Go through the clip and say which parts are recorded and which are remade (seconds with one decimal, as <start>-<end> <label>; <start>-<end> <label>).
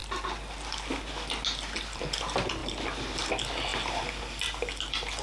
0.0-5.2 recorded